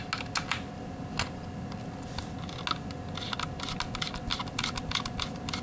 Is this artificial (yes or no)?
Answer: no